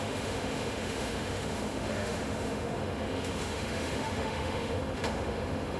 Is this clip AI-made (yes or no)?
yes